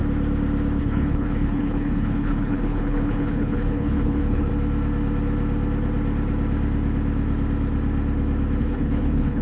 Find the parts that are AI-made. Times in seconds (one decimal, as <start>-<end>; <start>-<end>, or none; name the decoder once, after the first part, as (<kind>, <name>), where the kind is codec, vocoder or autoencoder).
0.8-4.5 (codec, HILCodec); 8.6-9.4